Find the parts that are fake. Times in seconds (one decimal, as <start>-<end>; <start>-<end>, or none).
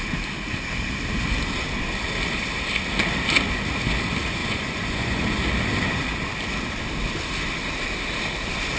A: 4.4-5.2